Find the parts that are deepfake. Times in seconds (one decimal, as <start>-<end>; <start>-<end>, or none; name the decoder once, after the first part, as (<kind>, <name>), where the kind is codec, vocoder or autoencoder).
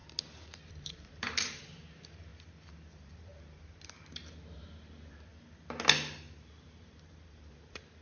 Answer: 0.7-2.3 (vocoder, BigVGAN v2); 2.9-3.3; 4.2-5.3; 6.3-8.0